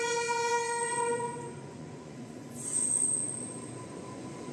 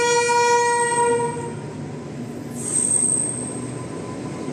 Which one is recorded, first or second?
second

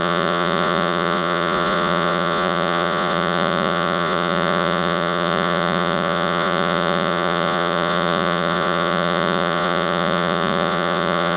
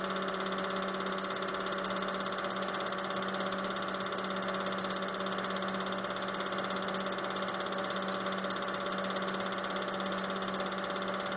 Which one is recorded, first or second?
second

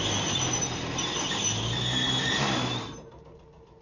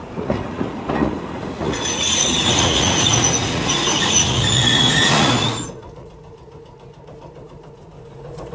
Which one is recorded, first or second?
first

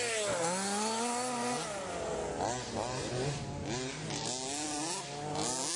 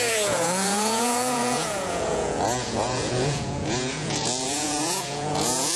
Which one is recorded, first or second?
first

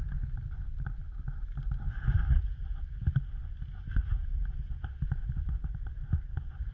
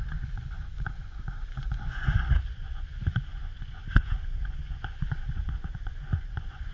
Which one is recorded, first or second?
first